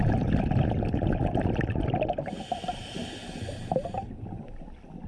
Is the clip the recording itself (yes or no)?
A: no